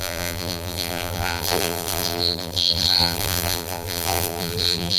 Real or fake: fake